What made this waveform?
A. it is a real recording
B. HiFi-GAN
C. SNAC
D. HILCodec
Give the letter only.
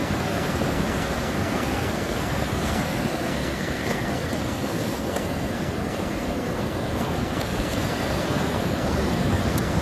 C